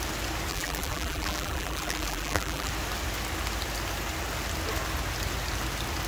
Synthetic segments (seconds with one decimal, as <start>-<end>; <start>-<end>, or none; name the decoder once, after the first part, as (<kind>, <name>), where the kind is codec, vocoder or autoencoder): 0.5-2.7 (vocoder, BigVGAN v2)